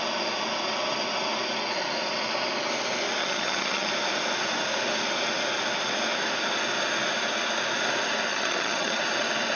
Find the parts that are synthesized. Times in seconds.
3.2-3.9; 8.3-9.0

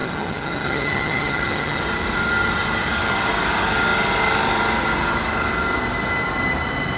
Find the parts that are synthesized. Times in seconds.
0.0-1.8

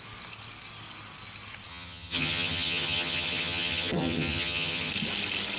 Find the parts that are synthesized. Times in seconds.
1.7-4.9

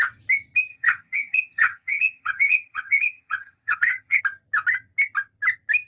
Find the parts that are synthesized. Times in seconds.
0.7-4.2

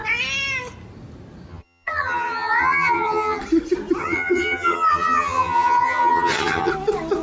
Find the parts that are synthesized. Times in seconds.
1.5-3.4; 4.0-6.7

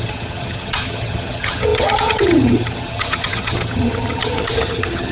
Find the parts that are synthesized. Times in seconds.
0.0-5.1

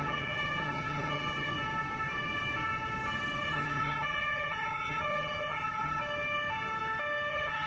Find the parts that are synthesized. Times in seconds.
0.0-1.5; 3.4-6.0; 7.3-7.7